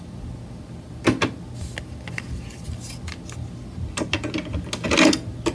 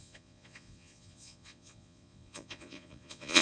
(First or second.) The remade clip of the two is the second